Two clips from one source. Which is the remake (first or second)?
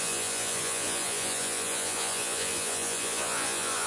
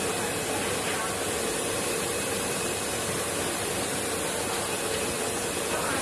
first